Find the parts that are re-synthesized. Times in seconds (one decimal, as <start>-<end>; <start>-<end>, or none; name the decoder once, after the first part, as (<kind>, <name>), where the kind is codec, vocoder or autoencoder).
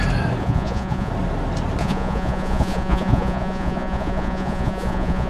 0.4-1.1 (vocoder, Vocos); 1.8-5.3